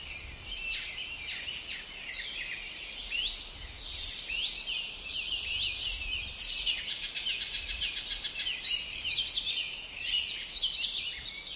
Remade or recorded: recorded